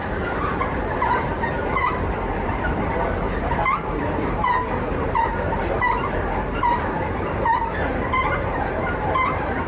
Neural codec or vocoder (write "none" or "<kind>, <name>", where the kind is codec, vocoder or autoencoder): vocoder, BigVGAN v2